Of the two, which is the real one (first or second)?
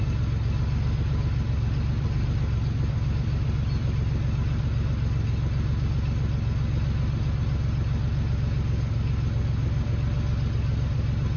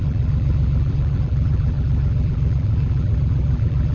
first